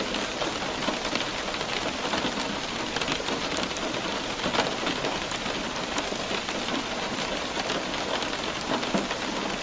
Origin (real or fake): real